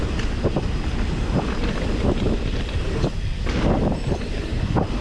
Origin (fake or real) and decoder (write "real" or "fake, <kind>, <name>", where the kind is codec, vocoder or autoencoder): real